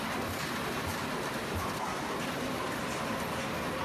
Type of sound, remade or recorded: recorded